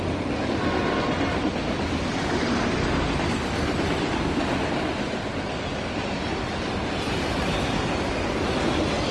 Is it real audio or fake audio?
real